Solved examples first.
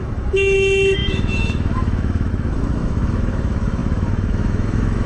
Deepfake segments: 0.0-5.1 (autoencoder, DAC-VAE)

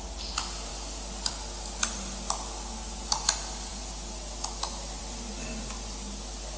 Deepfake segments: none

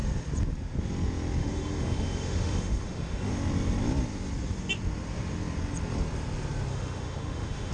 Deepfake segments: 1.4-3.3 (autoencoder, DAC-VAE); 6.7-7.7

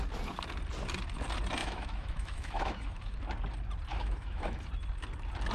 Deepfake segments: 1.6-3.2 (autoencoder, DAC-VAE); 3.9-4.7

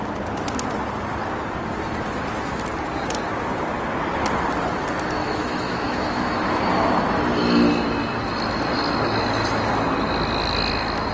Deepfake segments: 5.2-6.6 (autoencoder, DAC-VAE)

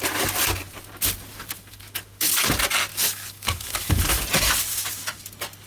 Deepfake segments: 1.3-2.3 (autoencoder, DAC-VAE); 2.9-4.2; 4.7-5.3

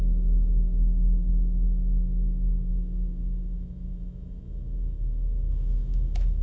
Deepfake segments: 0.0-1.3 (autoencoder, DAC-VAE); 2.7-6.4